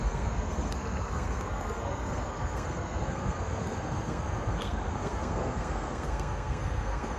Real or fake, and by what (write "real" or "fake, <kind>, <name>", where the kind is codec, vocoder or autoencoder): fake, codec, SNAC